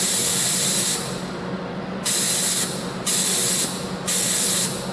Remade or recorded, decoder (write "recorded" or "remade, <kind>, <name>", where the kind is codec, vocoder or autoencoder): recorded